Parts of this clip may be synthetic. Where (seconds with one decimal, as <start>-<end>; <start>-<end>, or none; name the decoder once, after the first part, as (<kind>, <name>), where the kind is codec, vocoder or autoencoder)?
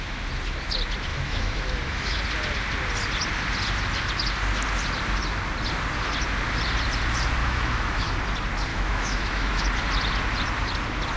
1.1-2.2 (autoencoder, DAC-VAE); 7.4-8.2; 8.7-9.6